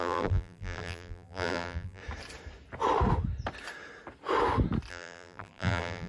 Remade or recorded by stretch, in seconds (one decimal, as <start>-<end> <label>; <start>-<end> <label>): 0.0-2.0 remade; 2.0-4.9 recorded; 4.9-6.1 remade